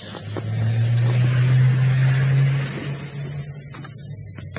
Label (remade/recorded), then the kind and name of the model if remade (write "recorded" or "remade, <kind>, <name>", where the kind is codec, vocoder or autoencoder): recorded